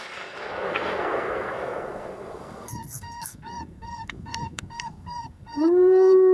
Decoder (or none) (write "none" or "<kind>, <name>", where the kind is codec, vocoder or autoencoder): codec, SNAC